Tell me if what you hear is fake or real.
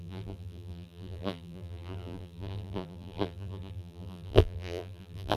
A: fake